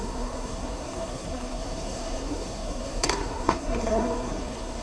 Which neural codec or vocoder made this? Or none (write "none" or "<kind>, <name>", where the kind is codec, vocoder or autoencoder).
codec, SNAC